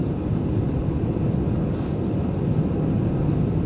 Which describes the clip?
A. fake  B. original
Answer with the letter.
B